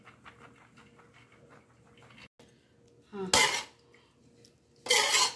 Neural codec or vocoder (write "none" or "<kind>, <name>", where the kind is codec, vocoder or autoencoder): none